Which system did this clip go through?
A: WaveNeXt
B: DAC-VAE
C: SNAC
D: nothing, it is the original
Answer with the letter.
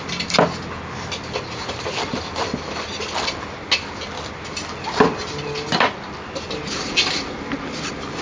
D